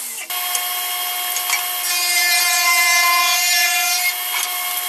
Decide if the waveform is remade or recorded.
recorded